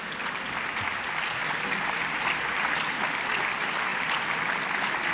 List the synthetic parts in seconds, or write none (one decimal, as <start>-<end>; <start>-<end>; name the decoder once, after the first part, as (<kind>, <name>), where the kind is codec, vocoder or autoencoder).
none

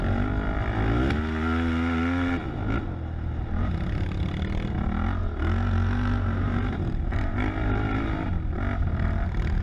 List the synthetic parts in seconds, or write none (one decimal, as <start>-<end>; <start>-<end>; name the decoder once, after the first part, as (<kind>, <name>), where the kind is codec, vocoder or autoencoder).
5.2-8.6 (vocoder, BigVGAN v2)

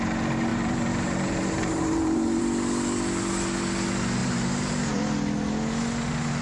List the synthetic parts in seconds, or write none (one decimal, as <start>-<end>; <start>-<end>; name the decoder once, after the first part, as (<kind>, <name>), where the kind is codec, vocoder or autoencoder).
0.5-2.4 (vocoder, BigVGAN v2); 4.2-5.0

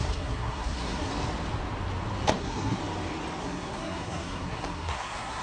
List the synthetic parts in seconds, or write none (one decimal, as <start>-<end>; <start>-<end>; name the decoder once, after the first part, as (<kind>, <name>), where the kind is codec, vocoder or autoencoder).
0.0-1.1 (codec, SNAC); 2.4-2.8; 3.4-5.4

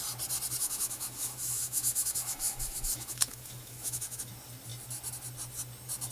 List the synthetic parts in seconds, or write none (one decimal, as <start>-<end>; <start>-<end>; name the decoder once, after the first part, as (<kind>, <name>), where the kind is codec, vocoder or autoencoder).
0.6-4.3 (autoencoder, DAC-VAE)

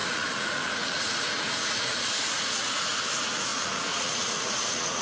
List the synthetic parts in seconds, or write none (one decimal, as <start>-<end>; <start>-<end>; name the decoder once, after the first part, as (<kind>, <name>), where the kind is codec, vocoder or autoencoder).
0.0-5.0 (vocoder, Vocos)